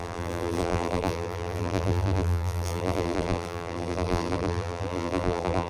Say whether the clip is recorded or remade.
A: remade